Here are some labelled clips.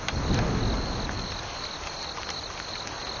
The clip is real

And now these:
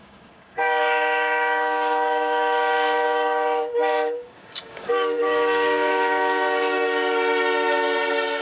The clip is fake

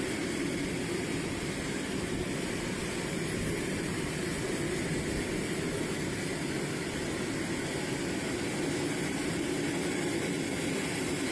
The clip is real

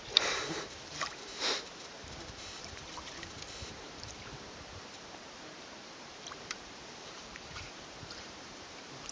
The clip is fake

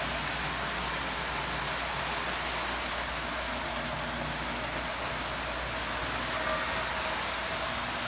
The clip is real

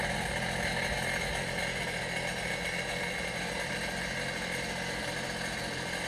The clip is real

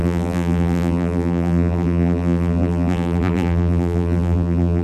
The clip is fake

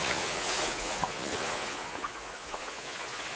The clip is fake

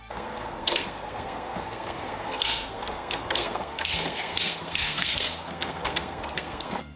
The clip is fake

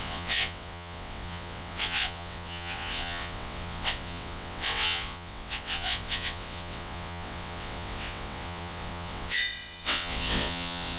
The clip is fake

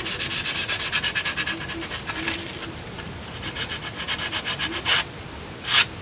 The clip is real